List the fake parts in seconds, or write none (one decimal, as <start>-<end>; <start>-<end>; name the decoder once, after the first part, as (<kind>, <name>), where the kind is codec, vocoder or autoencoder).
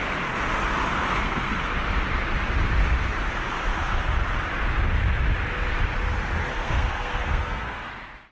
1.1-1.7 (codec, SNAC); 6.5-7.9